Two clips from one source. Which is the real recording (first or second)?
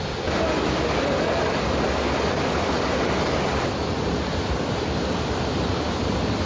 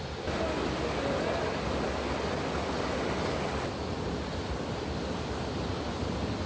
second